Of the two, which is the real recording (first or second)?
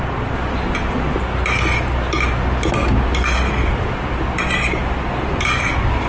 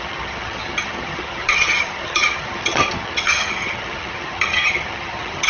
first